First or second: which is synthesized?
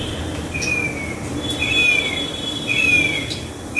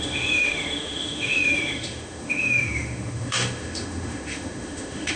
second